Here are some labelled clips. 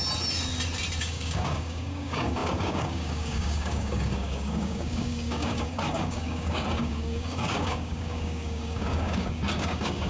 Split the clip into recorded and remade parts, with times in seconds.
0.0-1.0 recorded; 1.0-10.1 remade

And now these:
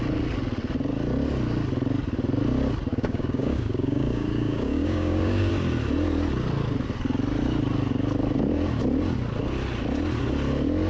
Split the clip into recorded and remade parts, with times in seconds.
0.0-2.9 recorded; 2.9-5.5 remade; 5.5-10.9 recorded

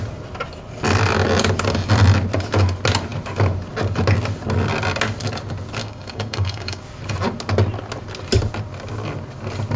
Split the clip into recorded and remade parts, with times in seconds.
0.0-5.8 recorded; 5.8-6.8 remade; 6.8-9.8 recorded